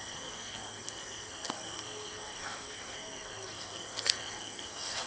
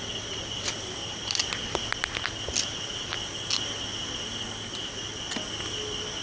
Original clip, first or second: second